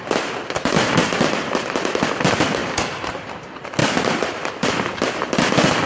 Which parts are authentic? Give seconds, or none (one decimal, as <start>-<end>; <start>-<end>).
0.0-1.0; 2.0-2.6; 3.3-3.8; 4.7-5.9